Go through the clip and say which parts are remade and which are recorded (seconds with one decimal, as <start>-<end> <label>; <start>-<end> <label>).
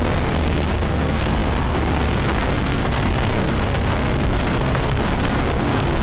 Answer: 0.0-6.0 remade